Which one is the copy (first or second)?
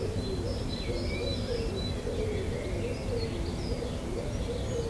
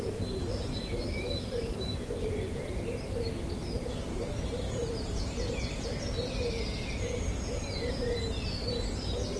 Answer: second